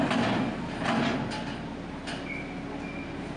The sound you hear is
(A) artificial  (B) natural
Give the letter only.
B